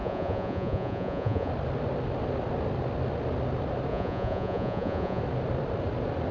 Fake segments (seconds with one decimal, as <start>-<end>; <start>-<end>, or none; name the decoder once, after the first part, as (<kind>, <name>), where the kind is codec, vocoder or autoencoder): 0.0-1.5 (vocoder, Vocos); 3.9-5.2